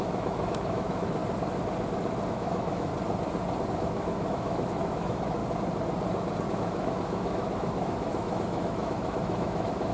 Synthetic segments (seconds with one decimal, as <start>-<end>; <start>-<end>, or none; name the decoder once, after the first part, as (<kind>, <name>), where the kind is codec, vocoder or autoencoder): 0.0-1.2 (autoencoder, DAC-VAE); 2.3-2.9; 3.7-5.4; 6.5-9.9